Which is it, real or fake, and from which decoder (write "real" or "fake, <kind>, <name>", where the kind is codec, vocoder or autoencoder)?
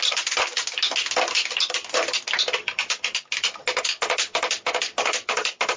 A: real